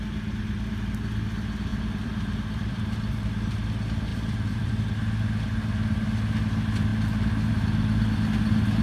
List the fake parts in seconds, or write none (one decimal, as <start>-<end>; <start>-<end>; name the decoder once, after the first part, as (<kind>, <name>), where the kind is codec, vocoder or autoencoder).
1.7-2.8 (vocoder, BigVGAN v2); 4.1-4.8